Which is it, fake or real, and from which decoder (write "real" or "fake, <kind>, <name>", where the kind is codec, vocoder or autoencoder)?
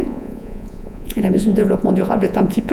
fake, vocoder, Vocos